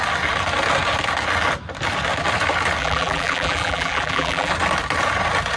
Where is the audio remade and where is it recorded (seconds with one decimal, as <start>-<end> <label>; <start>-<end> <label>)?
0.0-2.8 recorded; 2.8-4.5 remade; 4.5-5.6 recorded